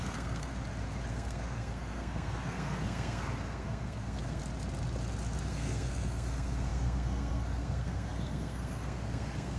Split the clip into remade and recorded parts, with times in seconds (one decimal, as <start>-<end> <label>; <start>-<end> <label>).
0.0-0.5 remade; 0.5-1.1 recorded; 1.1-4.4 remade; 4.4-5.5 recorded; 5.5-9.6 remade